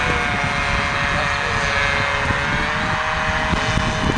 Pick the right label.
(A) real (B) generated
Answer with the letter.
A